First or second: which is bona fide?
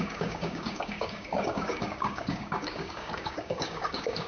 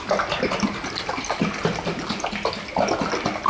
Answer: second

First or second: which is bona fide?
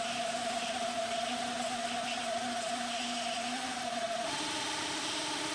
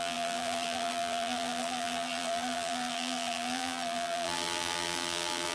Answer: first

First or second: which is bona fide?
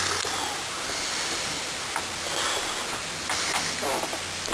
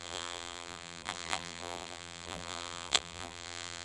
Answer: first